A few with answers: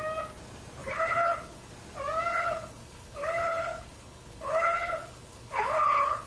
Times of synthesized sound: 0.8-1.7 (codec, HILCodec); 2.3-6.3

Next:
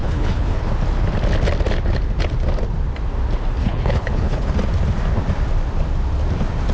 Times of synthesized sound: 0.0-0.7 (codec, HILCodec); 3.6-4.5